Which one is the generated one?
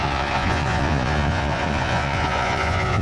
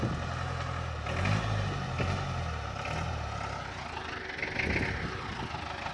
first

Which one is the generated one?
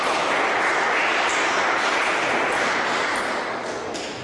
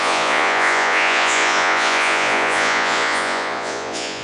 second